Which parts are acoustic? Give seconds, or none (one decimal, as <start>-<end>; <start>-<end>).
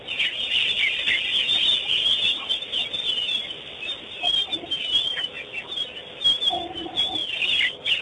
0.0-8.0